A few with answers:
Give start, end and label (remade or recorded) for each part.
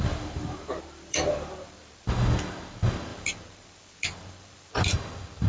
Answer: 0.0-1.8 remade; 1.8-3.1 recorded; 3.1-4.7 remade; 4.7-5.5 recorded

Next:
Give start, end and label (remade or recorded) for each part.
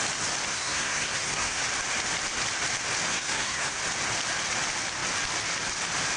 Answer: 0.0-0.5 recorded; 0.5-1.6 remade; 1.6-3.1 recorded; 3.1-3.8 remade; 3.8-6.2 recorded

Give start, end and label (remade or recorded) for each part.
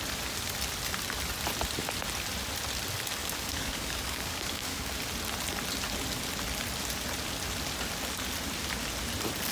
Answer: 0.0-3.2 recorded; 3.2-4.9 remade; 4.9-9.5 recorded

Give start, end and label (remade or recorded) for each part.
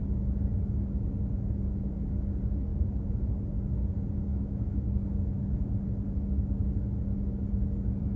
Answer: 0.0-4.3 recorded; 4.3-4.9 remade; 4.9-8.2 recorded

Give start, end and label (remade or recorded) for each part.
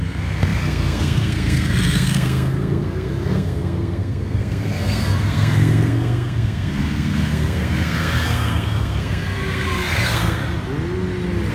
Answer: 0.0-10.4 remade; 10.4-11.5 recorded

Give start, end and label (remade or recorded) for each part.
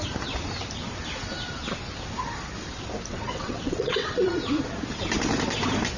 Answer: 0.0-3.1 recorded; 3.1-4.3 remade; 4.3-6.0 recorded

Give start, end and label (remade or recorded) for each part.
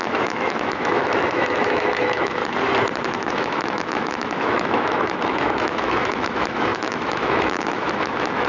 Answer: 0.0-2.4 remade; 2.4-3.3 recorded; 3.3-8.5 remade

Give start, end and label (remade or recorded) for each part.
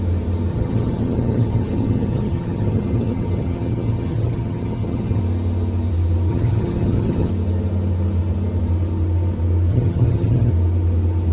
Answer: 0.0-0.5 recorded; 0.5-5.2 remade; 5.2-6.3 recorded; 6.3-7.3 remade; 7.3-9.7 recorded; 9.7-10.5 remade; 10.5-11.3 recorded